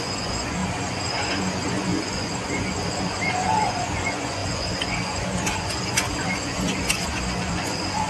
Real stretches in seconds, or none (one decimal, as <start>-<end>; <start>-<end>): none